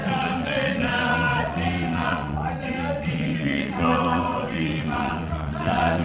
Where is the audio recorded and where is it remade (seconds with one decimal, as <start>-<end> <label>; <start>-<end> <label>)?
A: 0.0-6.0 remade